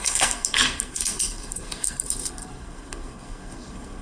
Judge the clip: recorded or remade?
remade